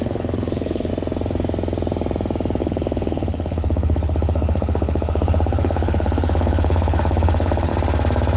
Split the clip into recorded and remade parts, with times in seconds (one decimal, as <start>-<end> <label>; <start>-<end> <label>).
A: 0.0-0.9 remade; 0.9-2.6 recorded; 2.6-7.7 remade; 7.7-8.4 recorded